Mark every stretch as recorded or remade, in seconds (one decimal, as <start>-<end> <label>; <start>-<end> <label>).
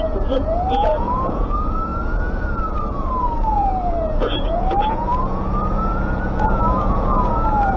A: 0.0-1.9 remade; 1.9-2.6 recorded; 2.6-7.8 remade